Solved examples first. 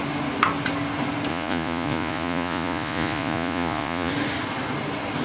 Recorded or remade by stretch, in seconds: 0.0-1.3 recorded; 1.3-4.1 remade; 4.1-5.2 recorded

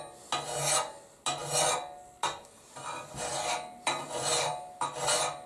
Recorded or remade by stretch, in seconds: 0.0-5.5 recorded

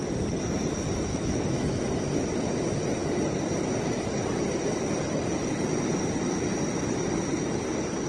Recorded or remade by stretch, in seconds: 0.0-1.1 recorded; 1.1-1.8 remade; 1.8-8.1 recorded

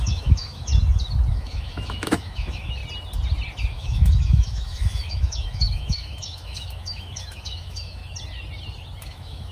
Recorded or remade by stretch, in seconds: 0.0-0.7 remade; 0.7-1.3 recorded; 1.3-2.8 remade; 2.8-3.7 recorded; 3.7-8.0 remade; 8.0-9.0 recorded; 9.0-9.5 remade

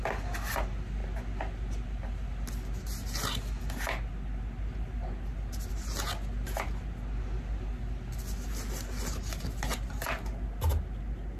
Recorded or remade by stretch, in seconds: 0.0-11.4 recorded

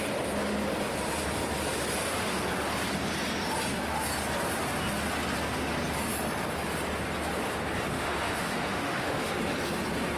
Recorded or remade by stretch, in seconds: 0.0-7.9 recorded; 7.9-9.3 remade; 9.3-10.2 recorded

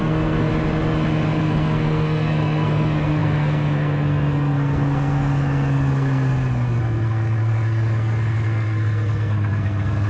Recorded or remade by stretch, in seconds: 0.0-0.5 remade; 0.5-1.4 recorded; 1.4-10.1 remade